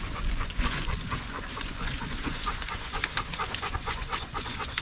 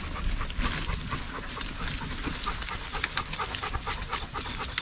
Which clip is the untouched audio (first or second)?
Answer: second